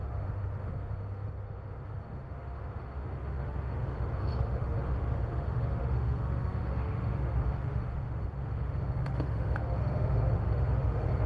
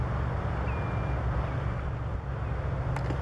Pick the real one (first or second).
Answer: second